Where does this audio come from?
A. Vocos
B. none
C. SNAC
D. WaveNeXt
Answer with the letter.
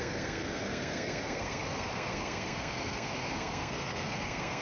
C